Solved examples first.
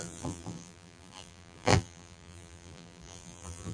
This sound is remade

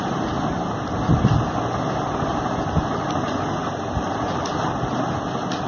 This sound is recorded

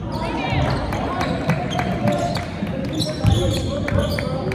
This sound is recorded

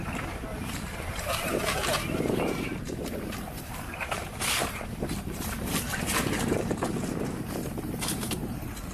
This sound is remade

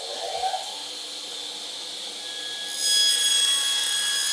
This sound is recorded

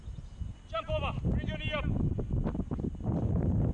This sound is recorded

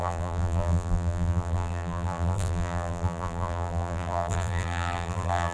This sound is remade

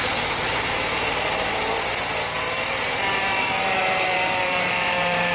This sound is remade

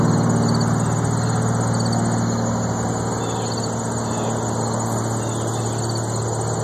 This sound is recorded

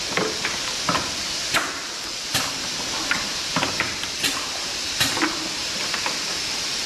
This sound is remade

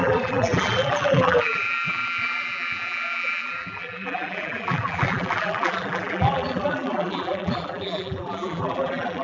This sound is remade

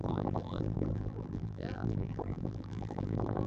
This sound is remade